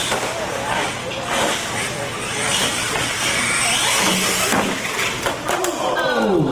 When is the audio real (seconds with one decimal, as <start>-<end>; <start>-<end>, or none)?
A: 0.0-6.5